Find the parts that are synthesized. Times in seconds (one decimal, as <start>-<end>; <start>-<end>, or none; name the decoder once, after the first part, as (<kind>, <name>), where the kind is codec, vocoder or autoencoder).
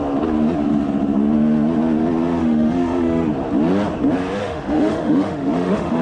2.4-3.3 (autoencoder, DAC-VAE); 4.4-6.0